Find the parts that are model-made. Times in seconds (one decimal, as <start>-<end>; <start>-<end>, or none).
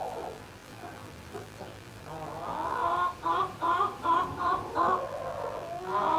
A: 0.0-2.8; 4.8-6.2